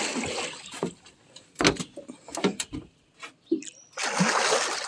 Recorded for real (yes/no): yes